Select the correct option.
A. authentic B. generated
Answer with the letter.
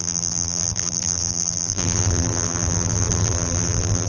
B